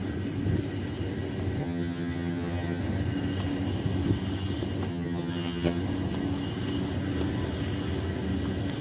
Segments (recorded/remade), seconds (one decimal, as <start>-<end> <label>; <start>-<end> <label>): 0.0-1.6 recorded; 1.6-2.8 remade; 2.8-4.9 recorded; 4.9-5.8 remade; 5.8-8.8 recorded